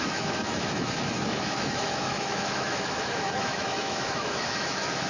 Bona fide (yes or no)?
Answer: no